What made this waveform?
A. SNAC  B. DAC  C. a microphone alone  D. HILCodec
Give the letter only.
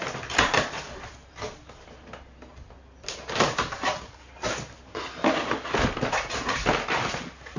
C